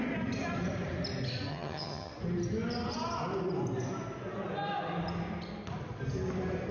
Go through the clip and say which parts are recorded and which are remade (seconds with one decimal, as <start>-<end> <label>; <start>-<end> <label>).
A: 0.0-1.5 recorded; 1.5-2.1 remade; 2.1-6.7 recorded